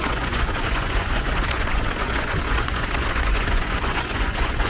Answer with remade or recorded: remade